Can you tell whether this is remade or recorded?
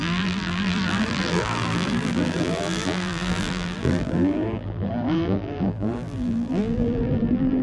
remade